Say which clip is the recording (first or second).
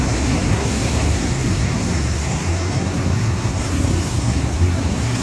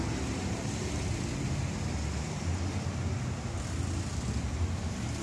second